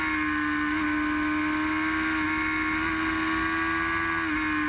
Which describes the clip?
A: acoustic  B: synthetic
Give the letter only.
A